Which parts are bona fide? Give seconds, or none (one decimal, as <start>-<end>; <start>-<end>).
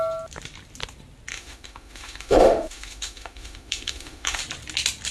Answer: 0.0-1.3; 4.4-5.1